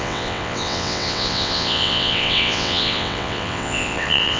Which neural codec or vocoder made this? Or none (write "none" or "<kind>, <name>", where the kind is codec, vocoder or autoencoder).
vocoder, WaveNeXt